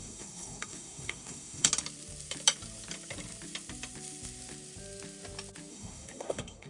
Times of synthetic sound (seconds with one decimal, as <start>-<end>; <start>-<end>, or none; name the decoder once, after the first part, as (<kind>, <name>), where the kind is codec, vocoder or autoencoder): 0.0-1.7 (codec, SNAC); 5.7-6.7